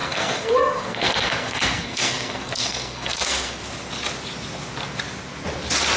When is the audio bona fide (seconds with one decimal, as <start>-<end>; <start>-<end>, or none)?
3.6-6.0